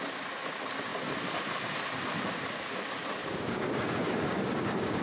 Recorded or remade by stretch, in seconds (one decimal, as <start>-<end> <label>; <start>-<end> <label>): 0.0-3.2 recorded; 3.2-5.0 remade